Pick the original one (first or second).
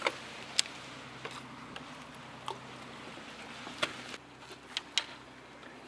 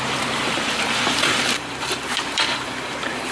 first